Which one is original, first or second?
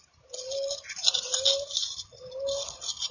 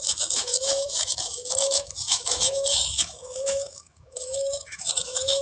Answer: first